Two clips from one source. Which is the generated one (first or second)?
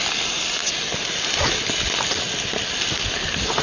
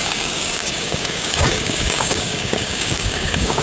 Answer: second